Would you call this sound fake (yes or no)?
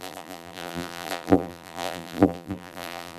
yes